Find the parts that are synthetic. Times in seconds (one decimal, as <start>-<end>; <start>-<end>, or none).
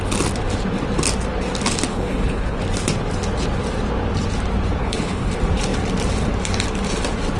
1.9-2.6; 4.8-5.3